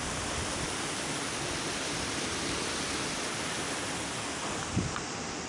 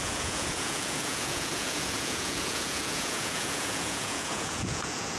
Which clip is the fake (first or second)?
second